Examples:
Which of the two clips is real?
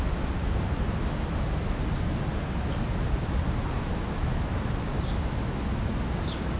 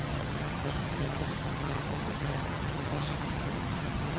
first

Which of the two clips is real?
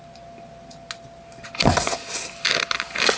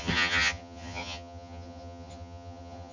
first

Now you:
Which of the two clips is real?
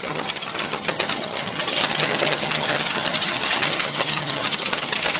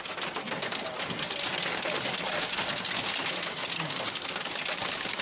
second